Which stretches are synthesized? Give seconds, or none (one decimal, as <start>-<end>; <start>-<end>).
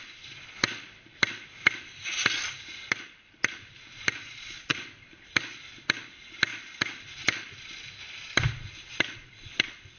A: 4.7-5.6